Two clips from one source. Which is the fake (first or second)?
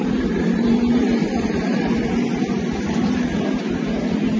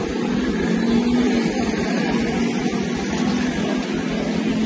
first